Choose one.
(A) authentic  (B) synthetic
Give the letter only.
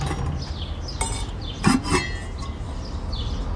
A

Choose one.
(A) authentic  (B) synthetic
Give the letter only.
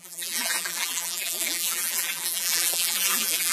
B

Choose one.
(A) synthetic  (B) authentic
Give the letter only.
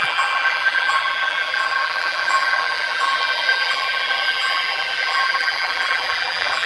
A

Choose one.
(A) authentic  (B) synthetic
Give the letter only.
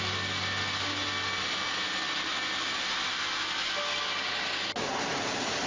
A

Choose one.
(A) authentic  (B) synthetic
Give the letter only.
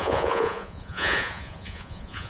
B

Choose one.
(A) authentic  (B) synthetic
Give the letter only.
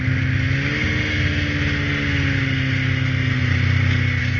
A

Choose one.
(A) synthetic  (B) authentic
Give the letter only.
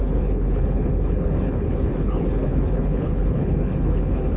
A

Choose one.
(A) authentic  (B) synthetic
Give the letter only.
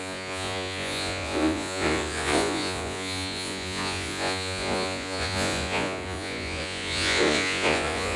B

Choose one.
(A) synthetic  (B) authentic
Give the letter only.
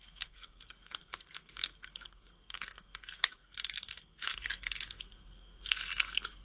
A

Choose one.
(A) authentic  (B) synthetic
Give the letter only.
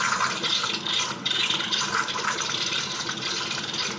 A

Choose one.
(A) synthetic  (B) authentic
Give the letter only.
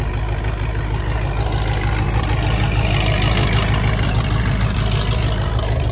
B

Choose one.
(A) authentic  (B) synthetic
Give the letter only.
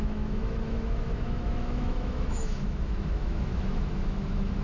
B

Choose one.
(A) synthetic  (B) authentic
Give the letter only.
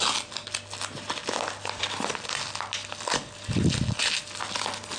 B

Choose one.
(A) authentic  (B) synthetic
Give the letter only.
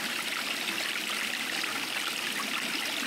A